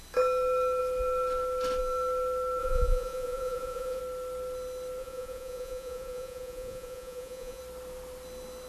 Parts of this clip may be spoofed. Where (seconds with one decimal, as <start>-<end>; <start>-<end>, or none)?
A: 2.6-4.0; 5.0-7.6